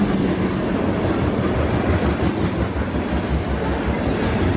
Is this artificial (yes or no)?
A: no